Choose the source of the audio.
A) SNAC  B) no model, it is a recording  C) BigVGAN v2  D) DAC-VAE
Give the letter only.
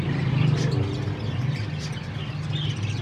B